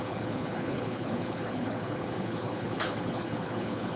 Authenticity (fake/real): fake